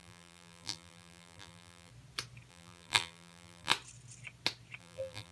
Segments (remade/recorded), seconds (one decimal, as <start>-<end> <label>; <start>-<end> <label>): 0.0-1.9 remade; 1.9-2.5 recorded; 2.5-3.7 remade; 3.7-4.8 recorded; 4.8-5.3 remade